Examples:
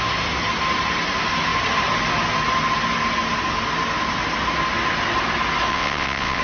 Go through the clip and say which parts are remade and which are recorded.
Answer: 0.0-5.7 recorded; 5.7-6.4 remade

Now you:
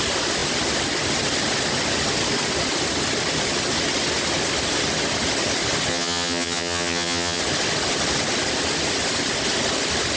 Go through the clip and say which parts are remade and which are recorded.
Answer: 0.0-5.9 recorded; 5.9-7.4 remade; 7.4-10.2 recorded

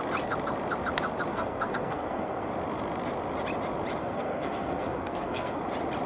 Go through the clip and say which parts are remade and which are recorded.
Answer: 0.0-1.3 recorded; 1.3-2.5 remade; 2.5-4.0 recorded; 4.0-5.6 remade; 5.6-6.1 recorded